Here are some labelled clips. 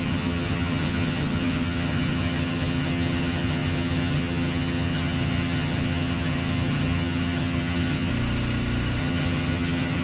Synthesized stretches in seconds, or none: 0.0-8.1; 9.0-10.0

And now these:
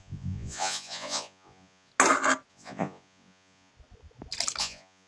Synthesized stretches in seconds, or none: 0.0-1.9; 2.5-3.7; 4.6-5.1

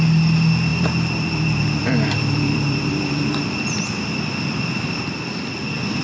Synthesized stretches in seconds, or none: 0.7-4.3